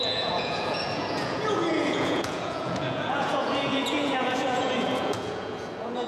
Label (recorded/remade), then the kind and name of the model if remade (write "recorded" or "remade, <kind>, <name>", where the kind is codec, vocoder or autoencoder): remade, vocoder, Vocos